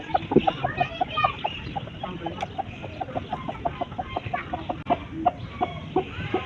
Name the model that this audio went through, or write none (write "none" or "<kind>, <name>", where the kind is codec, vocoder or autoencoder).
none